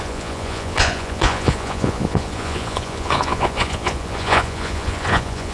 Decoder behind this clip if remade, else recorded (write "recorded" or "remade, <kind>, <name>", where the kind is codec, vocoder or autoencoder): remade, vocoder, Vocos